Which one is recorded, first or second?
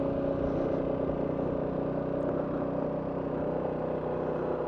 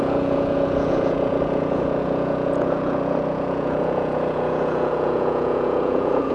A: first